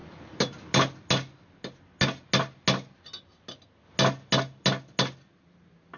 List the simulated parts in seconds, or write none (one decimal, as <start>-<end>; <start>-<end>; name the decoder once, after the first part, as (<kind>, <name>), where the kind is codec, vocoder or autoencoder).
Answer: none